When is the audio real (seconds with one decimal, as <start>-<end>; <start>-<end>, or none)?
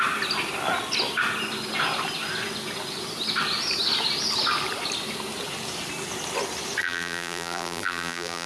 0.0-6.8